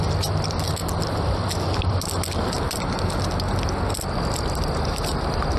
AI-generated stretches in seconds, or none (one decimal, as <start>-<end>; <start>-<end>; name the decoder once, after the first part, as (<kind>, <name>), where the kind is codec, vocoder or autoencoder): none